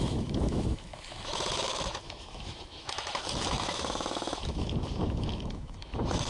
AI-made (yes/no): yes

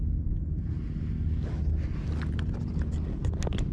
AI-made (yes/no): no